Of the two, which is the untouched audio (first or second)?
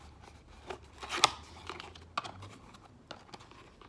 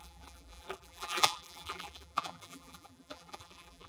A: first